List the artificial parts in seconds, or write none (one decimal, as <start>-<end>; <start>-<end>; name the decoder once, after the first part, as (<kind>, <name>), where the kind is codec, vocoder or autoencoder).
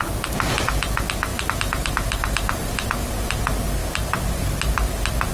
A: 1.3-2.9 (vocoder, BigVGAN v2)